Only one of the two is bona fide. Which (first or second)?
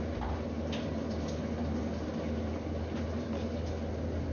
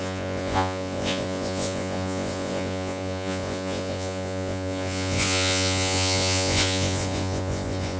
first